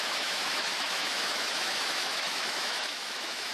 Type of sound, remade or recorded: remade